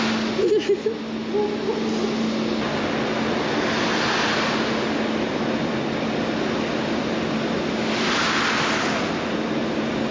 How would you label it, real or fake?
real